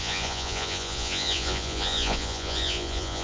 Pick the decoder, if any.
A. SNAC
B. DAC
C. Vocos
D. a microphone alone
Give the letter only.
C